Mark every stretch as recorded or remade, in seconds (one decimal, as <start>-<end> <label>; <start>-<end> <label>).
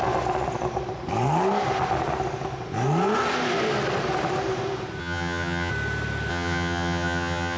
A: 0.0-5.0 recorded; 5.0-5.7 remade; 5.7-6.3 recorded; 6.3-7.6 remade